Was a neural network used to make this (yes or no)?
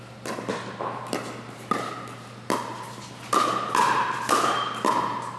no